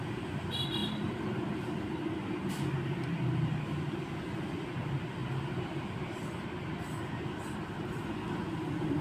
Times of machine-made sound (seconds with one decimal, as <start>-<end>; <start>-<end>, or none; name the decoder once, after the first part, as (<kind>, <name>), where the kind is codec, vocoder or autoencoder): none

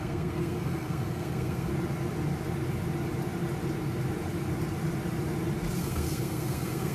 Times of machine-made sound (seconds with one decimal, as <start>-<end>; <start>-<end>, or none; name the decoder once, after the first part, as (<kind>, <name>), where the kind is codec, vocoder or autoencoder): 0.0-1.7 (codec, SNAC); 5.8-6.9

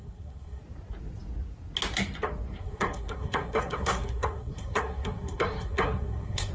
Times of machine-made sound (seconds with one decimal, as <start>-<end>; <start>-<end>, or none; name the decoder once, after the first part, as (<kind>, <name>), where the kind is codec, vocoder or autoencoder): 0.0-0.6 (codec, SNAC); 2.6-6.5

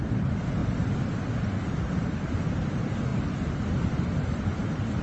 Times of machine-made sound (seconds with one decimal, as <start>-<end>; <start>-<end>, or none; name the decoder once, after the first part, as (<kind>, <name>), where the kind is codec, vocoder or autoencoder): none

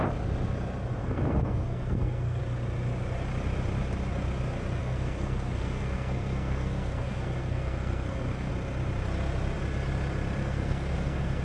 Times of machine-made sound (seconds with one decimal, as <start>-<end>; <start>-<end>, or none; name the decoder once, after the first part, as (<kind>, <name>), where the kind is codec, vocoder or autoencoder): 1.0-2.4 (codec, SNAC); 4.8-8.5; 10.4-11.4

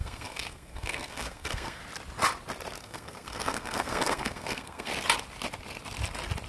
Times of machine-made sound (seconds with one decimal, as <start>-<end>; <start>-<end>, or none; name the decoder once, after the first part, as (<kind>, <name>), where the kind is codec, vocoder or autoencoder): 0.0-1.8 (codec, SNAC); 2.8-4.9

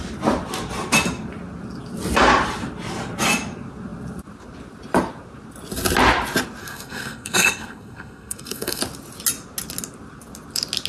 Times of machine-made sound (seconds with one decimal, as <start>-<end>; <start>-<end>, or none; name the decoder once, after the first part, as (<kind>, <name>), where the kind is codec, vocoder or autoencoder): 6.6-8.8 (codec, SNAC)